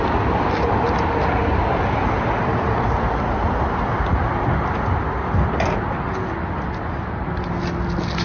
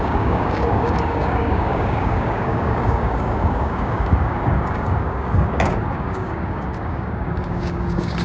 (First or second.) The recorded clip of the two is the first